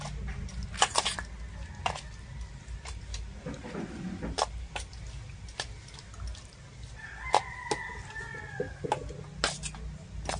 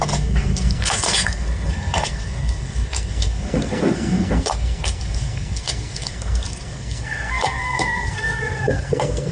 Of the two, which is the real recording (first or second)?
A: first